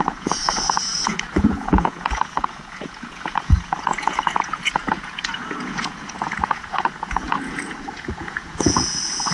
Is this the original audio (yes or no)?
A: no